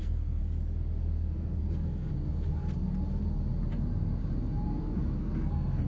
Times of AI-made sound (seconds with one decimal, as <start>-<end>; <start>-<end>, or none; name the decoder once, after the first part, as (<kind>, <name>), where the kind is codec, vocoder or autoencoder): 0.0-0.4 (codec, SNAC); 1.0-2.1; 4.8-5.9